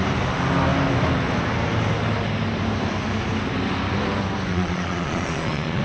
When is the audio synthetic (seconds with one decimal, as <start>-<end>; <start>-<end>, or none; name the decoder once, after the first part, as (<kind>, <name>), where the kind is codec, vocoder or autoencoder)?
4.5-5.8 (vocoder, Vocos)